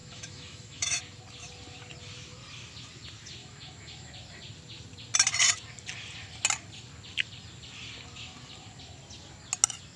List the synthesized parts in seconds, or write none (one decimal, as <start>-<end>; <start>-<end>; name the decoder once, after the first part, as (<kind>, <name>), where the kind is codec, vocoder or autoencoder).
0.0-1.0 (autoencoder, DAC-VAE); 3.4-4.1